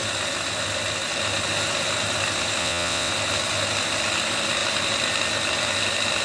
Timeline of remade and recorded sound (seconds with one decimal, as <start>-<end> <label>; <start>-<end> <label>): 0.0-2.6 recorded; 2.6-3.1 remade; 3.1-6.2 recorded